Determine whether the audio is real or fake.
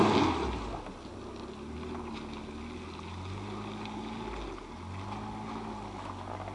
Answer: real